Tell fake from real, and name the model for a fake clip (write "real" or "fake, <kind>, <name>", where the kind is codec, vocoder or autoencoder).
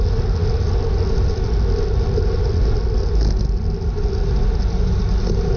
real